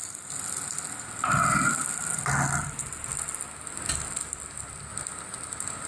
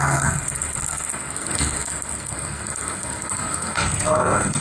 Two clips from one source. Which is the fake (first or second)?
second